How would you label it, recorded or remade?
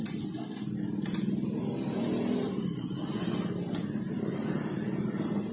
recorded